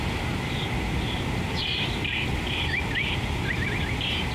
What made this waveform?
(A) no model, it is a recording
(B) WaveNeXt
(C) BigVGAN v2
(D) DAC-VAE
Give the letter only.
C